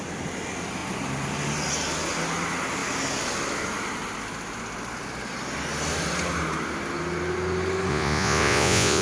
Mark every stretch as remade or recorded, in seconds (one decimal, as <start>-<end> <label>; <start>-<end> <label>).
0.0-7.9 recorded; 7.9-9.0 remade